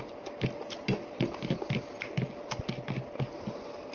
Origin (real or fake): real